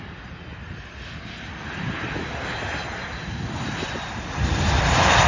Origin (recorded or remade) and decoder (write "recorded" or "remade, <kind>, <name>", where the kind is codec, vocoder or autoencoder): recorded